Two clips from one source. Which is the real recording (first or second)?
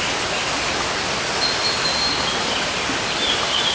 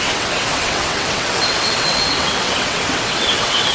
first